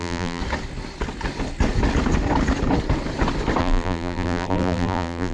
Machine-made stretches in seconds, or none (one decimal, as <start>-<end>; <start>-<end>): 0.0-0.4; 3.6-5.3